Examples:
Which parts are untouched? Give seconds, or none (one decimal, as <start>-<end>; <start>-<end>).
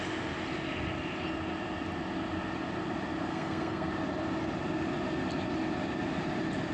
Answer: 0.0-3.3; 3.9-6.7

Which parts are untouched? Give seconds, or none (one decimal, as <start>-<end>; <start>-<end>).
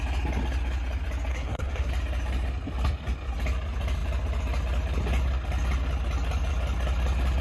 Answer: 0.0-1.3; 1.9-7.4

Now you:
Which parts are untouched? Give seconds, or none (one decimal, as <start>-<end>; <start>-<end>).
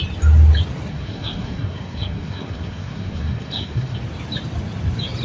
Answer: 0.0-0.9; 4.0-5.2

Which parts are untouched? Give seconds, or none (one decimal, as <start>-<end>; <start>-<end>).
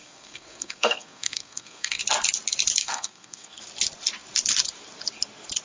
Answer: 2.0-2.8; 3.6-5.6